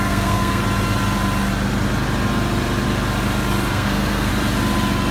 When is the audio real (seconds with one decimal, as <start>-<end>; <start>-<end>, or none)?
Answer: 0.6-3.7; 4.3-5.1